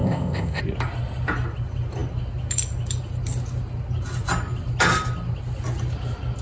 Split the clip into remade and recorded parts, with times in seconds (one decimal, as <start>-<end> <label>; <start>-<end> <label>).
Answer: 0.0-0.6 remade; 0.6-6.4 recorded